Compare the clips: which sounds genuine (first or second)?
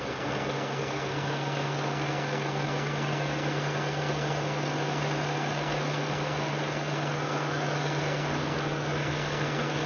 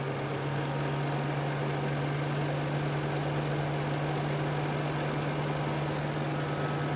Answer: second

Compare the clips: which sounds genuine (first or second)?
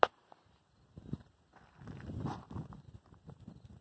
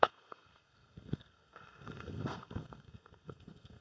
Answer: first